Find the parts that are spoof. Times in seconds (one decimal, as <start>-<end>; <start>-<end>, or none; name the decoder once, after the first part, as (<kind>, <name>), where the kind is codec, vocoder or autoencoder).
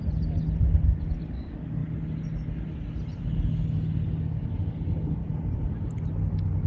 5.2-5.7 (vocoder, Vocos)